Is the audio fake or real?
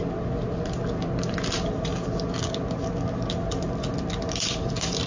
real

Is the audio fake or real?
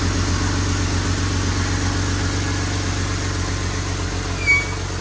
real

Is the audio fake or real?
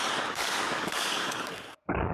fake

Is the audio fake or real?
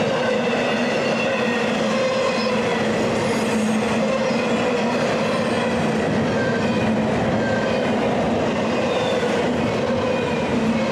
real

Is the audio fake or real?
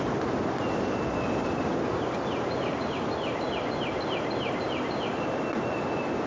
real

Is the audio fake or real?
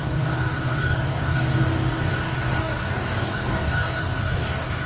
fake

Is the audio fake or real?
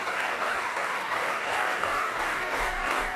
fake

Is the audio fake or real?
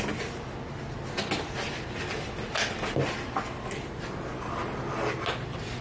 real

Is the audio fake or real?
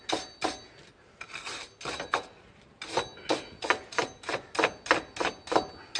real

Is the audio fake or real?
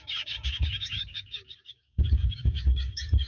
fake